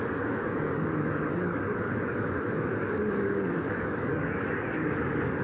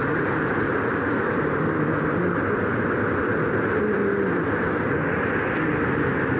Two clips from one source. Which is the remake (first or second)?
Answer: first